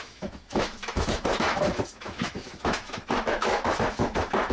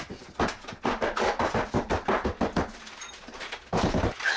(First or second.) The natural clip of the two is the second